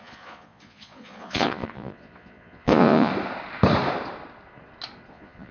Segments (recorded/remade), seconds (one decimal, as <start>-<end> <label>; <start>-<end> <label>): 0.0-3.1 remade; 3.1-5.1 recorded; 5.1-5.5 remade